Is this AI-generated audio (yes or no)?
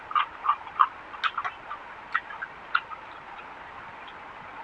no